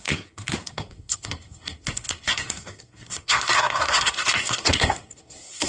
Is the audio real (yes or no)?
no